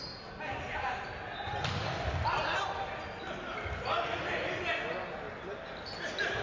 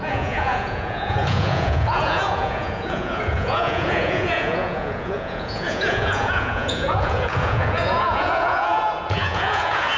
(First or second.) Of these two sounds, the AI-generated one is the second